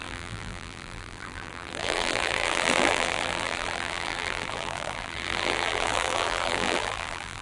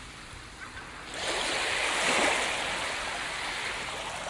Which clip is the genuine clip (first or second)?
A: second